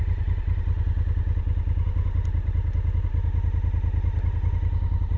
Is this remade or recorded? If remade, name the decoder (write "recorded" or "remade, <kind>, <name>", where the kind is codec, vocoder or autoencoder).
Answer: recorded